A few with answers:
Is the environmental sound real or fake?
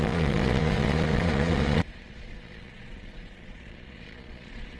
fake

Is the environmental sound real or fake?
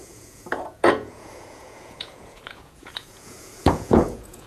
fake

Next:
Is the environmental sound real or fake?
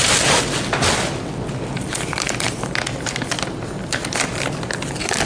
real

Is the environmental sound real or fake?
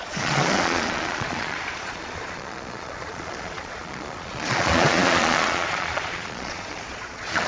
fake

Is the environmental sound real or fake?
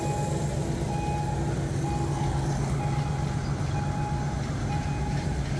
real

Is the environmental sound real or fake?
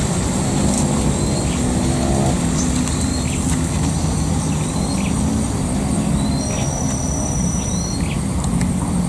real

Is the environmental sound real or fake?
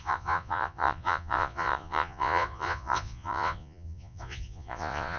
fake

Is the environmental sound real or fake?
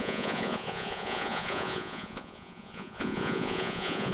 fake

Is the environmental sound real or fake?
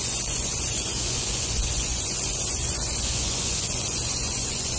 fake